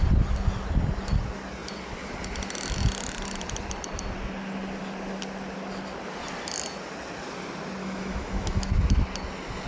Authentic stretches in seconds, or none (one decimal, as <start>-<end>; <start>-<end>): 0.0-7.8; 8.7-9.7